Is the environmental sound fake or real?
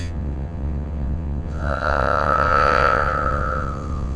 fake